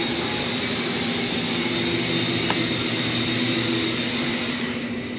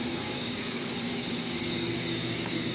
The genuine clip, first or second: first